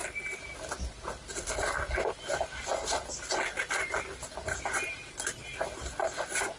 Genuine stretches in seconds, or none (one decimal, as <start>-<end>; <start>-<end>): 0.0-6.6

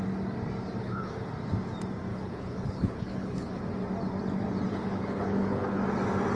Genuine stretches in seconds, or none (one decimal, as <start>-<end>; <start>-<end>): 0.0-0.8; 1.3-2.1; 3.6-4.7; 5.8-6.4

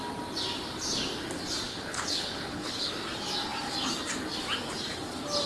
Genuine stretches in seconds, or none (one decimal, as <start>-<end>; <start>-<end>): 0.0-1.7; 2.9-5.5